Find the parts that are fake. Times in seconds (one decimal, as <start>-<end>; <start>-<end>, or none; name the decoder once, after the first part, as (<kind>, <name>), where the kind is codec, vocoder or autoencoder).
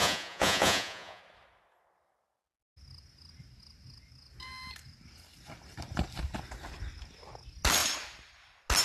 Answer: 0.0-1.2 (vocoder, Vocos)